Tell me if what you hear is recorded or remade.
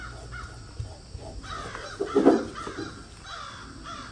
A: recorded